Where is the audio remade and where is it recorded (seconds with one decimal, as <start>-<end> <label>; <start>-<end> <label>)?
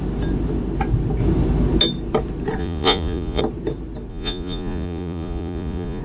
0.0-2.6 recorded; 2.6-3.4 remade; 3.4-4.1 recorded; 4.1-6.0 remade